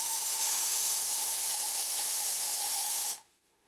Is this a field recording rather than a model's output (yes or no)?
no